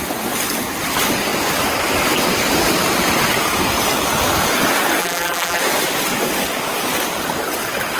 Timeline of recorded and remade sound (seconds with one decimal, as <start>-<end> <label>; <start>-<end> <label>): 0.0-5.0 recorded; 5.0-5.6 remade; 5.6-8.0 recorded